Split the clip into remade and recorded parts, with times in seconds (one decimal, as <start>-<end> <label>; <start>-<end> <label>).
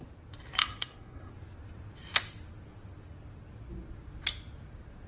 0.0-0.6 recorded; 0.6-1.3 remade; 1.3-5.1 recorded